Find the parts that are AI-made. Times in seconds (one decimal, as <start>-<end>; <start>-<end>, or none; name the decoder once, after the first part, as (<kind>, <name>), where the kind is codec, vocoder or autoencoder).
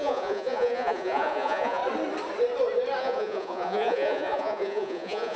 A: 0.0-1.8 (vocoder, Vocos); 3.0-5.4